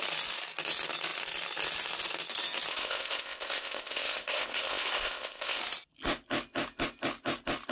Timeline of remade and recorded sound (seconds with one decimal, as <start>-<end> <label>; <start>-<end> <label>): 0.0-2.7 recorded; 2.7-5.6 remade; 5.6-7.7 recorded